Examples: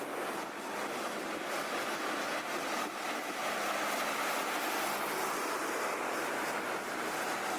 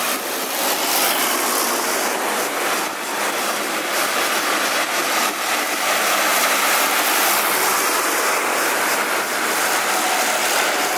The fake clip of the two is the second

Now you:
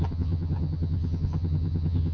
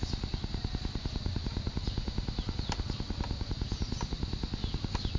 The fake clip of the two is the first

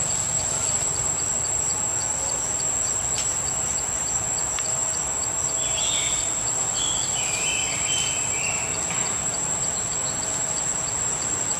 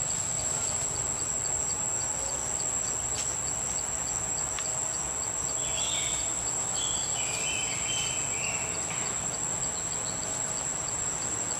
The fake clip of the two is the first